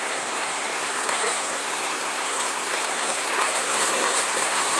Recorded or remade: remade